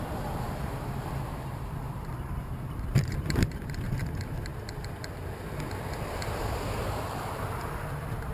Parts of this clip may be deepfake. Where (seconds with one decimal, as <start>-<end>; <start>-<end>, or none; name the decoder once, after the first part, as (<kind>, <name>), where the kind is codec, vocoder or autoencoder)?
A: 0.0-4.5 (vocoder, BigVGAN v2); 6.9-8.3